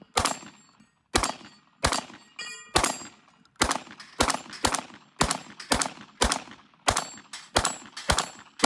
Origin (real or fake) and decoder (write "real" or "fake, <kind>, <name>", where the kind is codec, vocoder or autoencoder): real